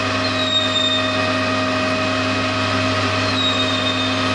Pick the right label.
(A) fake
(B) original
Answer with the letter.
B